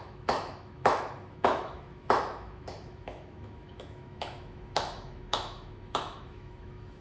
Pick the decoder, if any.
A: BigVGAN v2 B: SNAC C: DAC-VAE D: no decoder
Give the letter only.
C